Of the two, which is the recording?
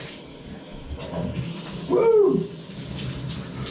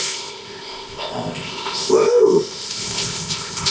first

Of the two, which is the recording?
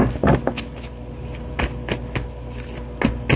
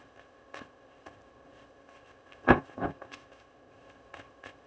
first